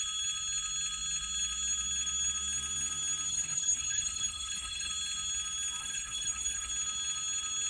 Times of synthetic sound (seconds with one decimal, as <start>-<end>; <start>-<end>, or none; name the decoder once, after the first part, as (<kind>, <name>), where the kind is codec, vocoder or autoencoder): 3.3-4.9 (codec, HILCodec); 5.8-6.7